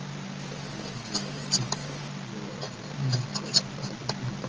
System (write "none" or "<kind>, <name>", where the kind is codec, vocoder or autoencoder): none